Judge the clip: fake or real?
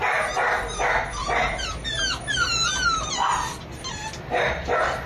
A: real